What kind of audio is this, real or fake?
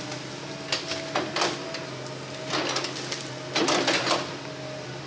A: real